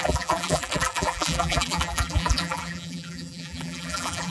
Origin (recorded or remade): remade